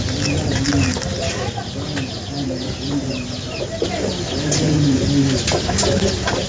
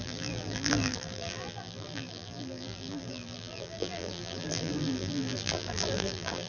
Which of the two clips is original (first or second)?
first